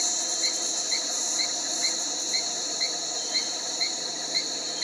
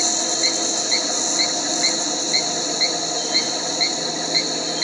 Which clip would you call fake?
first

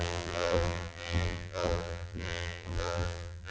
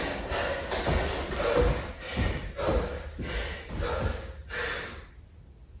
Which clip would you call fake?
first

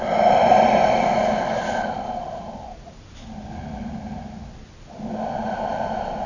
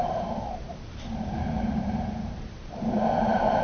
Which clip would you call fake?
second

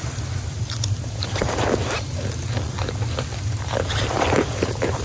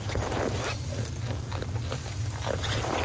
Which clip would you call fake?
first